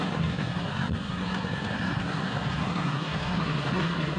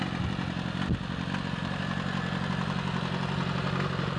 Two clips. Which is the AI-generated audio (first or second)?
first